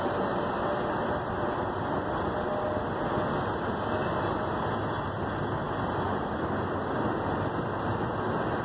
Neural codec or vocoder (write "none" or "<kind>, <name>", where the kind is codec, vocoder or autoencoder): none